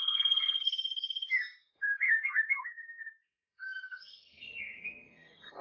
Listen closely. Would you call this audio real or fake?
fake